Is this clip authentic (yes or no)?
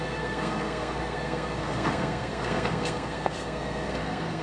no